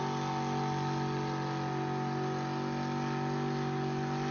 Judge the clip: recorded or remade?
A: recorded